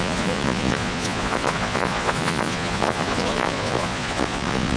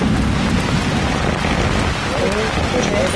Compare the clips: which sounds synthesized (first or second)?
first